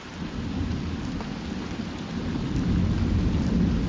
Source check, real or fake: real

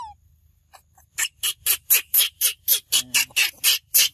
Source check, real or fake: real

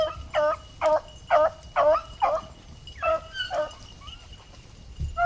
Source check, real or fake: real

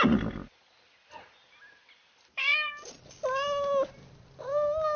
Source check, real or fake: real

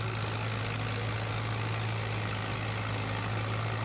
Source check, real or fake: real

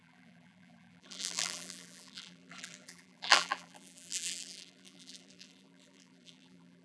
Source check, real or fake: fake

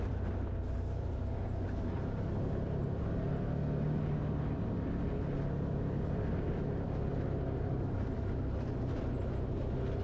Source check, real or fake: real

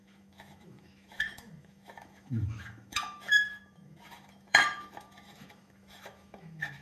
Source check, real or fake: fake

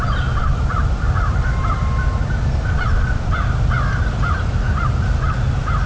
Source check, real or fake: real